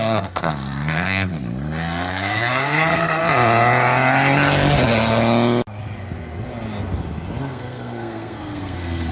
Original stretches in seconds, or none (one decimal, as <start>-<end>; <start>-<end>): 1.3-2.1; 3.2-7.4

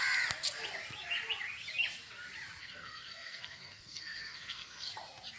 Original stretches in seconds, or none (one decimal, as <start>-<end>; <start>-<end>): 0.0-2.6; 4.9-5.4

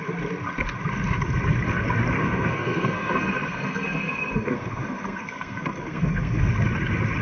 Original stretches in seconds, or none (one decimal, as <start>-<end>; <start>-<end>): 0.0-2.2; 6.5-7.2

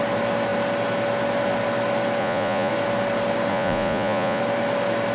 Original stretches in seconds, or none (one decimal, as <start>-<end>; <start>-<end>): 0.0-2.2; 2.7-3.5; 4.4-5.1

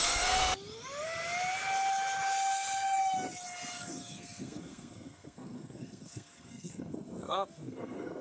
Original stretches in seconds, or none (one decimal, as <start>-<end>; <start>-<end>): 0.4-3.7

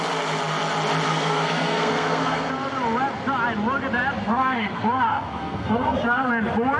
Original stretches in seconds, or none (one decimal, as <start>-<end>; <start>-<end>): 0.0-1.1; 2.5-4.2; 6.3-6.8